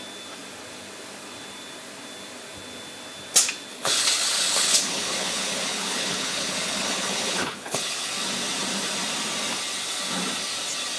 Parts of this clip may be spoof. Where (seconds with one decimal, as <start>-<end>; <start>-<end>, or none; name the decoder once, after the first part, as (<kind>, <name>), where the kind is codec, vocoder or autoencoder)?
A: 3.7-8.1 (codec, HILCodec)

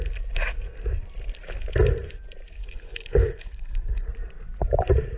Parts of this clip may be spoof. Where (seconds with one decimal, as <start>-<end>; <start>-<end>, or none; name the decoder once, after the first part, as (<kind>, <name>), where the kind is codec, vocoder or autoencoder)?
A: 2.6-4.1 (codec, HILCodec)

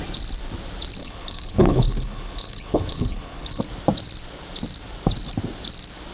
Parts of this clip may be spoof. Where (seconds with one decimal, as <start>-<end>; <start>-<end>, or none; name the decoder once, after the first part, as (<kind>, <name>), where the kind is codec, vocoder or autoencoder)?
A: 1.0-3.6 (codec, HILCodec)